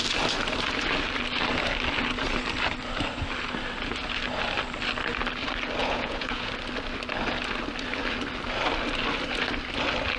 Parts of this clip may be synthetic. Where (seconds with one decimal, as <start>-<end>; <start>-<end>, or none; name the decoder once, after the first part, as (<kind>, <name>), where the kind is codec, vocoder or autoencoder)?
5.8-6.5 (vocoder, Vocos)